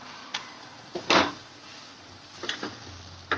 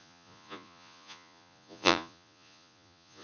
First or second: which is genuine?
first